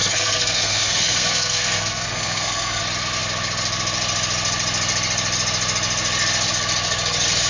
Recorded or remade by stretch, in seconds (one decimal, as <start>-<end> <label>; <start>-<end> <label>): 0.0-2.8 remade; 2.8-7.5 recorded